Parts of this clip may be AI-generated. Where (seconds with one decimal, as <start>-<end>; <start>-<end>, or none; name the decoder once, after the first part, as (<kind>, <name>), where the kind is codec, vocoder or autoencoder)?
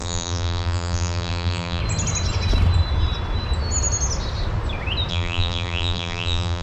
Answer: 0.0-1.8 (vocoder, BigVGAN v2); 5.1-6.6